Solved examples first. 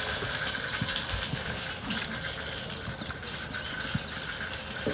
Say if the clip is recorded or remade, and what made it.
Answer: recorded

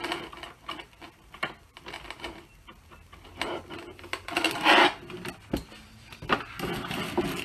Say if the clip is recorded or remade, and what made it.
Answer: recorded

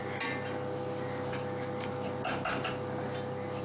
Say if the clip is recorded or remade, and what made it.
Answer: recorded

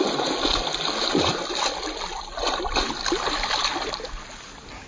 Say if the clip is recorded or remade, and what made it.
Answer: recorded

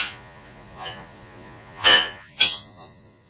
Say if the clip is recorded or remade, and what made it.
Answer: remade, vocoder, Vocos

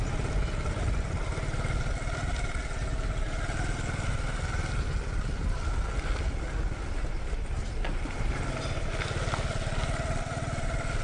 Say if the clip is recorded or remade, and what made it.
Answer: recorded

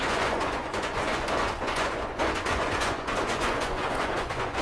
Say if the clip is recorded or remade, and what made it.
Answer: remade, vocoder, Vocos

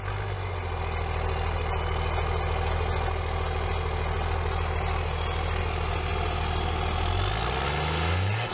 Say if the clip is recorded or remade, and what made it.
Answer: recorded